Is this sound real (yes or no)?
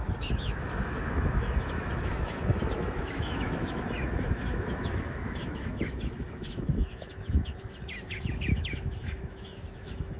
no